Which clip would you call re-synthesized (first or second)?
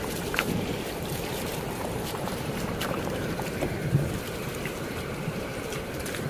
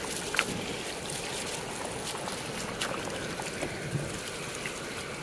first